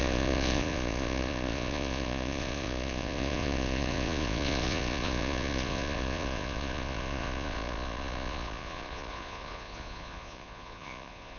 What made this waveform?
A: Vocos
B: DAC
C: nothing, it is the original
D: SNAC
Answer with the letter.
A